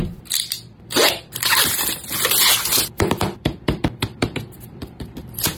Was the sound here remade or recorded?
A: remade